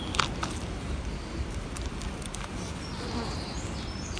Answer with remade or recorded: recorded